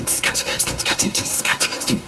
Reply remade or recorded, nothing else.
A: remade